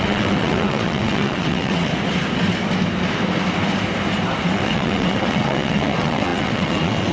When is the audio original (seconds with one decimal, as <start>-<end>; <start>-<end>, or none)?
1.9-4.4